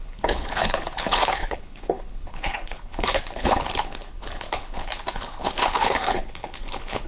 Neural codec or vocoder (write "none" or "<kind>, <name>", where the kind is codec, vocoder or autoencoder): codec, HILCodec